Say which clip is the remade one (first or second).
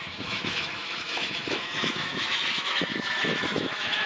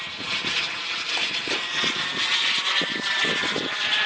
first